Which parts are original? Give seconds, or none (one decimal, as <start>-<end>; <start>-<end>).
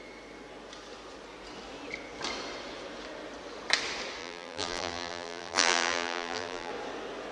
0.0-4.2; 6.7-7.3